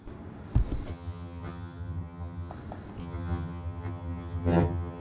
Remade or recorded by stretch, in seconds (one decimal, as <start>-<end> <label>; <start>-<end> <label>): 0.0-0.9 recorded; 0.9-2.5 remade; 2.5-3.0 recorded; 3.0-5.0 remade